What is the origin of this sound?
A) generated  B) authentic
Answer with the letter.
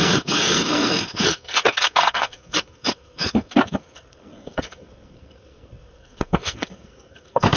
A